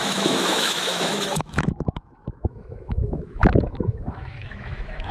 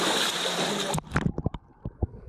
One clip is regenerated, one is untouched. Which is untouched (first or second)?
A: second